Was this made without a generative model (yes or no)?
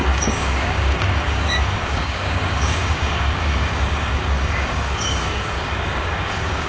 no